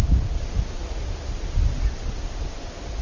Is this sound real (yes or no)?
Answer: yes